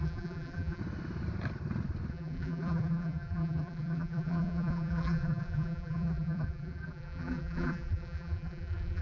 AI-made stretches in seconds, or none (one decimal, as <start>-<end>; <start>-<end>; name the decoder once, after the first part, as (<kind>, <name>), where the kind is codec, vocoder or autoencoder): 0.0-0.8 (vocoder, BigVGAN v2); 2.1-9.0